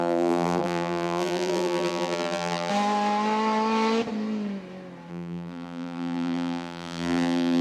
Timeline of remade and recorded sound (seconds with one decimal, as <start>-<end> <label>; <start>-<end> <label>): 0.0-2.7 remade; 2.7-5.1 recorded; 5.1-7.6 remade